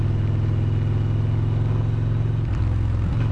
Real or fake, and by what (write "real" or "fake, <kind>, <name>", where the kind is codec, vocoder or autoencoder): real